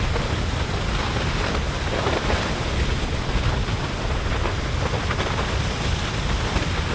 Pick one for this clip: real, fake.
real